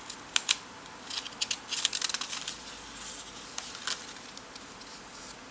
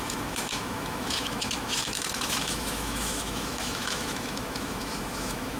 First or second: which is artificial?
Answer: second